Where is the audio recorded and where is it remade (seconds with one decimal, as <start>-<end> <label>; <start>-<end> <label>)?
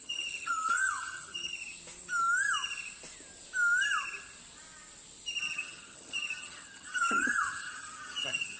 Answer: 0.0-1.5 remade; 1.5-5.4 recorded; 5.4-8.6 remade